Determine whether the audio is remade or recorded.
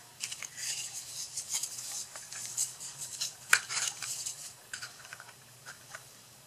remade